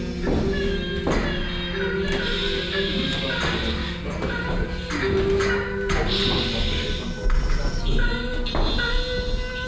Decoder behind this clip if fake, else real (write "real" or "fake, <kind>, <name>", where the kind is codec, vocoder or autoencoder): real